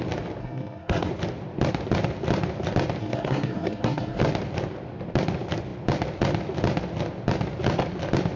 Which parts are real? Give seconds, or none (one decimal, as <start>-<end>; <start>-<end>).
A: 0.0-0.4; 1.1-3.0; 4.2-8.4